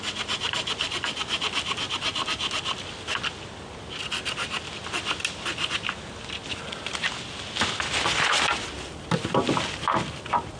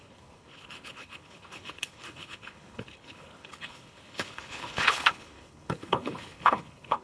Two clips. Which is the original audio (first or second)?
first